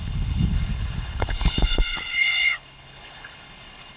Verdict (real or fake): fake